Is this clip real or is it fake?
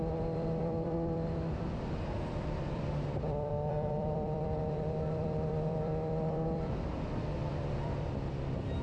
fake